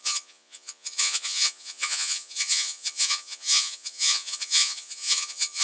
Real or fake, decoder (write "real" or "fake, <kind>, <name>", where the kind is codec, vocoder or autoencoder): fake, vocoder, Vocos